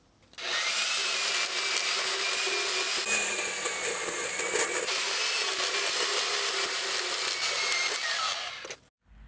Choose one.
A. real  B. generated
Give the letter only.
A